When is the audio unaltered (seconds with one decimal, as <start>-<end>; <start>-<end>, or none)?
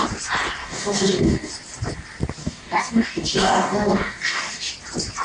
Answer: 0.0-0.6; 1.5-2.4; 4.7-5.2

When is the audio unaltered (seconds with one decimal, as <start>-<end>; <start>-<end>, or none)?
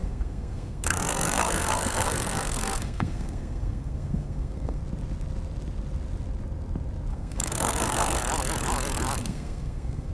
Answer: 4.8-7.1; 8.2-9.2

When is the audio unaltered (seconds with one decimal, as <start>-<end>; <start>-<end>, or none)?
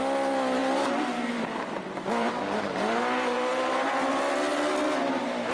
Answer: 0.0-0.6; 3.9-5.5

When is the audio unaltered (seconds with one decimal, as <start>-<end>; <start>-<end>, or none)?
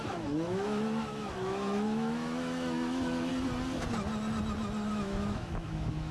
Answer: 3.3-4.9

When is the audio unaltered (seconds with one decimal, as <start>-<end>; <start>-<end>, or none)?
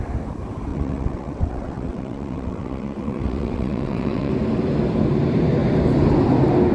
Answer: 0.0-0.7; 4.3-6.7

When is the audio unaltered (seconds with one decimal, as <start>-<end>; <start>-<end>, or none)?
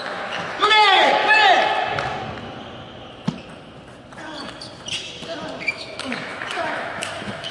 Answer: 1.2-5.7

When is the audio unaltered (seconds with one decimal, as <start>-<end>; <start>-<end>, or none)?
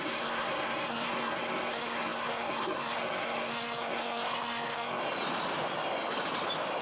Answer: 5.0-6.8